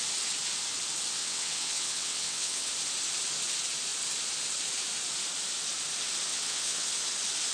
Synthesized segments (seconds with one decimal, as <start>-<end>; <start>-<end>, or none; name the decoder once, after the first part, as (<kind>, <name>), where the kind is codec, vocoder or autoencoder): 1.2-2.7 (vocoder, WaveNeXt); 6.3-6.9